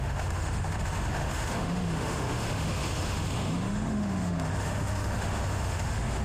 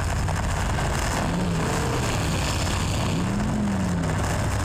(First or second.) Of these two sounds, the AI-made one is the first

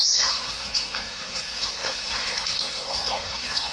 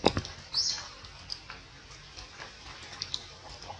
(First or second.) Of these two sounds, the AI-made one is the first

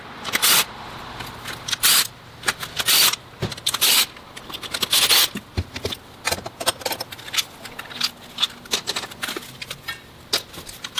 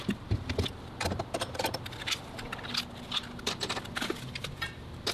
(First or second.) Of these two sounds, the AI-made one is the second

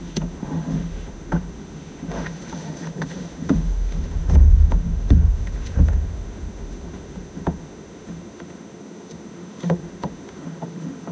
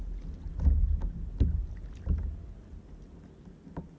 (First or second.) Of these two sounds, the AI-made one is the first